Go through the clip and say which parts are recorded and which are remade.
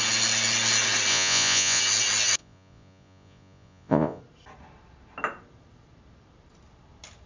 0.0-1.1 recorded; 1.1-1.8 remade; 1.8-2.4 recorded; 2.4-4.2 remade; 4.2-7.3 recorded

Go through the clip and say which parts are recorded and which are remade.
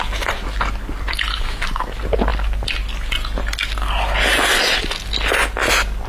0.0-6.1 recorded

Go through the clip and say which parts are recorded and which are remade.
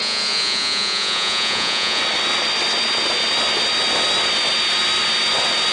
0.0-2.0 remade; 2.0-5.7 recorded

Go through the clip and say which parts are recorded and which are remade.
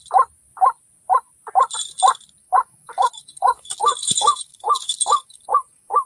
0.0-2.4 recorded; 2.4-6.1 remade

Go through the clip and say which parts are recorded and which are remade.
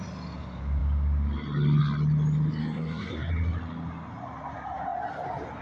0.0-2.6 recorded; 2.6-3.3 remade; 3.3-5.6 recorded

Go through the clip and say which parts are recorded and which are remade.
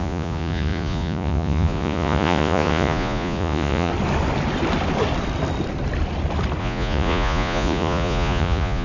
0.0-3.9 remade; 3.9-6.6 recorded; 6.6-8.8 remade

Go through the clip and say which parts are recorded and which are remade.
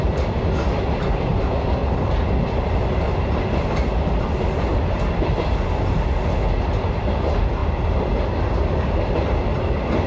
0.0-1.8 remade; 1.8-6.9 recorded; 6.9-10.1 remade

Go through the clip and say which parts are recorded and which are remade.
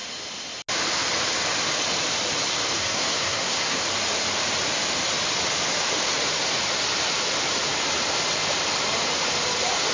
0.0-2.8 recorded; 2.8-3.8 remade; 3.8-9.9 recorded